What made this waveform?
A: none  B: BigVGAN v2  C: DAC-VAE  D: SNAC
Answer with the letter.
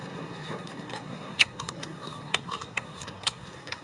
D